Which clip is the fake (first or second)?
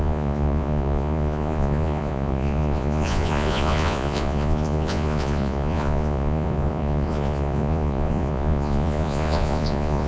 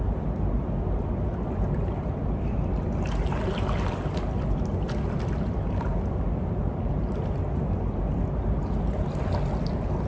first